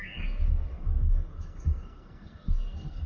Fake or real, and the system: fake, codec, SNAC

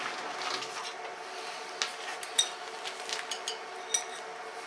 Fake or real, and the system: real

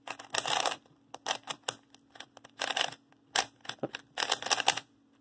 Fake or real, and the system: real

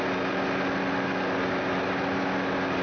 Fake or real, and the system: real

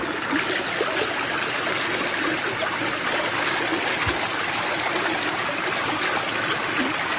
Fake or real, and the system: real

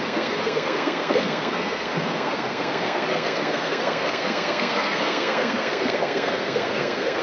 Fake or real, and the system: fake, codec, SNAC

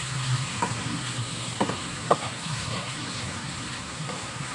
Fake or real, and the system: fake, codec, SNAC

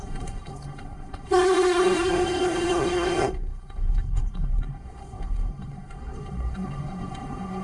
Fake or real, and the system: fake, codec, SNAC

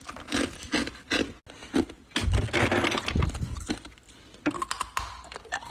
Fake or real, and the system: real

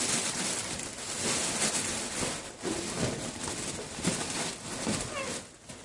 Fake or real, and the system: real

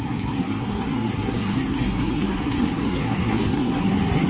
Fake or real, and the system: fake, codec, SNAC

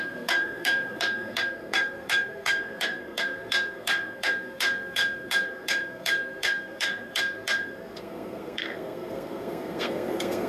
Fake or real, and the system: fake, codec, SNAC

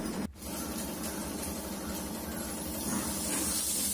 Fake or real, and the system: real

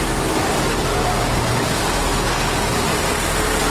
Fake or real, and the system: real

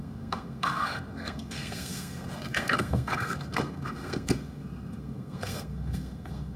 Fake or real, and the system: fake, codec, SNAC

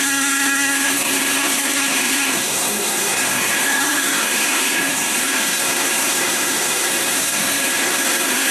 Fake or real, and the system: fake, codec, SNAC